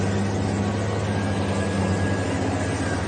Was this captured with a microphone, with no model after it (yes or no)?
yes